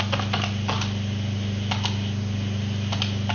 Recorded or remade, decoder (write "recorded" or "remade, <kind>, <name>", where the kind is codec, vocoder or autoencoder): recorded